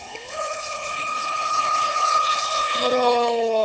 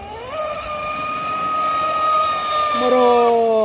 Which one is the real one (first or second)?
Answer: second